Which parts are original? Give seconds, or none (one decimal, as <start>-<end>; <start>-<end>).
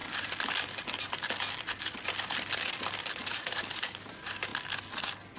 0.0-3.2; 4.5-5.4